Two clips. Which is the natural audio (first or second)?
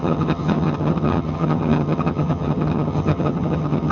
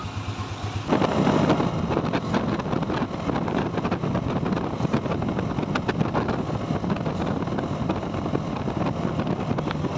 second